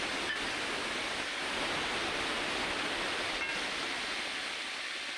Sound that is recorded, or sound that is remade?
recorded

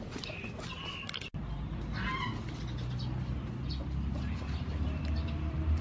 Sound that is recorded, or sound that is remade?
recorded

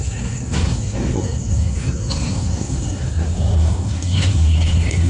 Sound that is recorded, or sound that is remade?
remade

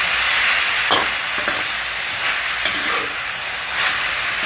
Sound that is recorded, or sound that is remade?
recorded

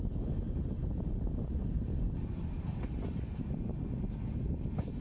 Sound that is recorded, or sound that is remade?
recorded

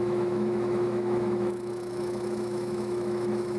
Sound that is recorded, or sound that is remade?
remade